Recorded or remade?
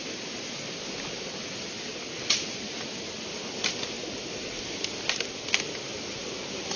recorded